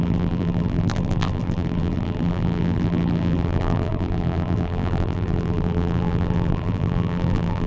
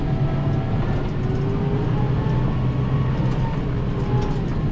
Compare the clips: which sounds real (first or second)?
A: second